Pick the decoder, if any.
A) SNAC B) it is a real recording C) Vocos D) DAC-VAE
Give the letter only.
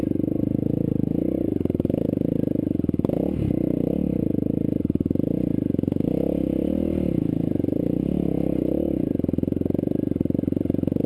B